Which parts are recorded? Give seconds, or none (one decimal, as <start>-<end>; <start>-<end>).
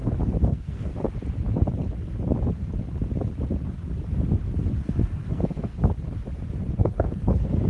0.9-4.8; 5.8-6.7